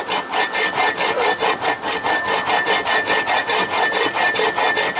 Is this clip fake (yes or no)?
no